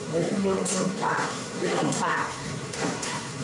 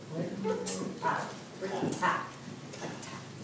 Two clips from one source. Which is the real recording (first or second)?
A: second